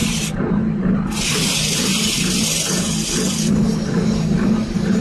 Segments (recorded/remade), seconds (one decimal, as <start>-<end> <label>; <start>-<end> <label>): 0.0-1.9 remade; 1.9-3.5 recorded; 3.5-5.0 remade